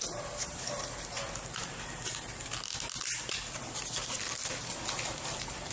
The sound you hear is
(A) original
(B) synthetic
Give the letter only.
A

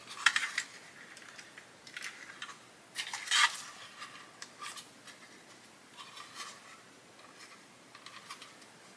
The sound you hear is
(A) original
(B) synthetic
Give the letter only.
A